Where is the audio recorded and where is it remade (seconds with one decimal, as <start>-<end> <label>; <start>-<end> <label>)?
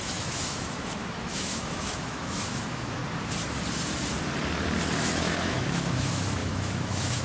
0.0-3.0 remade; 3.0-5.0 recorded; 5.0-7.2 remade